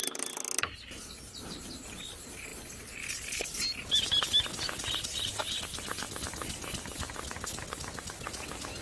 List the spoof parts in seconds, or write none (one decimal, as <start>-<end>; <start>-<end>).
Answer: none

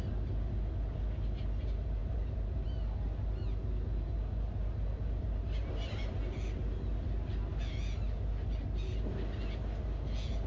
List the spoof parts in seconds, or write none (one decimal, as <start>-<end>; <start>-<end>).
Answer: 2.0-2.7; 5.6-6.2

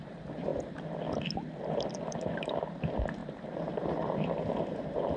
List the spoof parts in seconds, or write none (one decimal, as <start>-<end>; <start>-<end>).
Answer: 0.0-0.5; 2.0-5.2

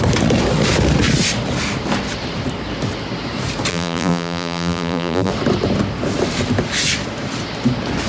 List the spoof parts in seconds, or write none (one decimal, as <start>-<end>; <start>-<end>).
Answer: 3.7-5.3

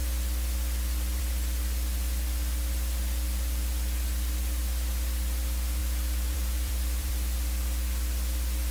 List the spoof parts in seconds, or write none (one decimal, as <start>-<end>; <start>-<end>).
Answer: 5.8-7.1